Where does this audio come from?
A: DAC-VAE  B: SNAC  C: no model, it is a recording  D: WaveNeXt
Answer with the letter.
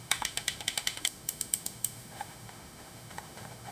A